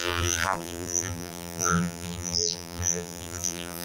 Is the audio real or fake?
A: fake